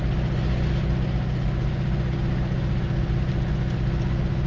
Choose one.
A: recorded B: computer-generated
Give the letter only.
A